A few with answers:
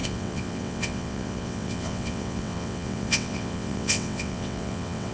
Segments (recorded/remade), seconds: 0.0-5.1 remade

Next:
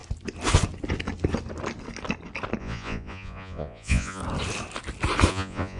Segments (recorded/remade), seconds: 0.0-2.6 recorded; 2.6-4.2 remade; 4.2-5.3 recorded; 5.3-5.8 remade